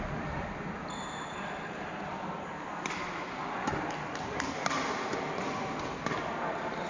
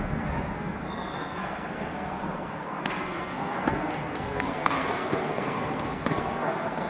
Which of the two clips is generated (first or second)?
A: second